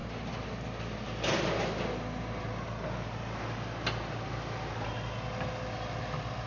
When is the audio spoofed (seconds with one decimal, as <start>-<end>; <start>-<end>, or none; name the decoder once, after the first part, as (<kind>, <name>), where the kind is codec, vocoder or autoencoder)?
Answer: none